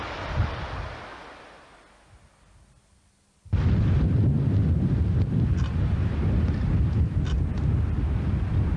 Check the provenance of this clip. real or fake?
real